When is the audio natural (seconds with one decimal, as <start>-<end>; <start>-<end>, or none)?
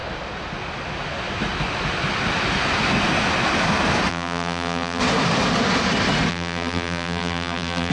0.0-4.1; 5.0-6.3